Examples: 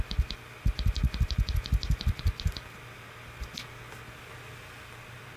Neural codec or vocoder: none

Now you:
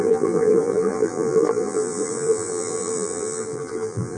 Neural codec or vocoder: vocoder, BigVGAN v2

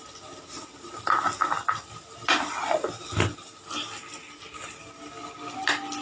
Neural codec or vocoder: none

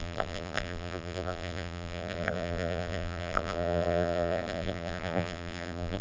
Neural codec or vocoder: vocoder, BigVGAN v2